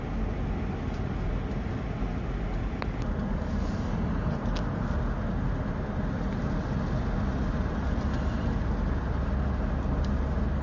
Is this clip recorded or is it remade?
recorded